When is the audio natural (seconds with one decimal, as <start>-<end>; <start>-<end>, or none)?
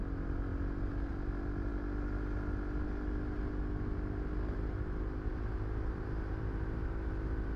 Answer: 0.0-7.6